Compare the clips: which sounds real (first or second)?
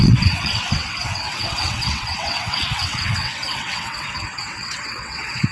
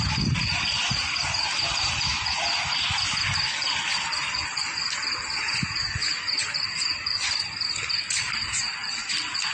second